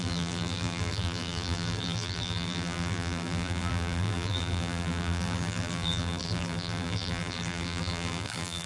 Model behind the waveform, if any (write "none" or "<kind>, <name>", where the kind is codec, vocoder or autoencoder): vocoder, BigVGAN v2